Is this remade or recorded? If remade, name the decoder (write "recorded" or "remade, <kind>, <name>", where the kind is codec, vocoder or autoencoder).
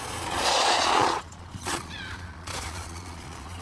remade, vocoder, Vocos